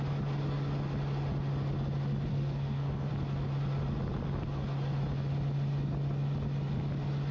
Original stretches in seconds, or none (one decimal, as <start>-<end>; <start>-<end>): 0.0-2.3; 3.1-7.3